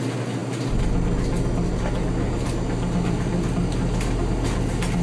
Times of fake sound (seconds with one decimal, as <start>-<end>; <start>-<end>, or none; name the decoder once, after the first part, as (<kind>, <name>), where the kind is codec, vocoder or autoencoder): none